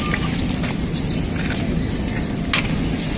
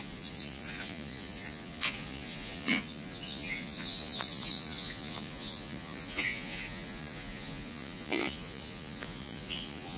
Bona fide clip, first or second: first